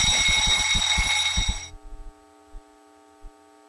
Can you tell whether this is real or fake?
real